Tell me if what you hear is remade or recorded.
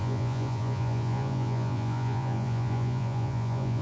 remade